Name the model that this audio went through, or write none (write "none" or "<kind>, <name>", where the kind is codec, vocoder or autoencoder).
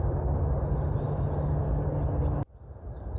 none